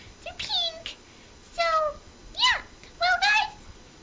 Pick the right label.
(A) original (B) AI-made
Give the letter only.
A